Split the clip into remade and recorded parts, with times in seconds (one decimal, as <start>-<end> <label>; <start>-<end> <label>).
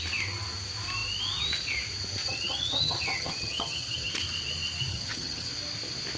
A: 0.0-2.2 recorded; 2.2-4.1 remade; 4.1-4.9 recorded; 4.9-5.5 remade; 5.5-6.2 recorded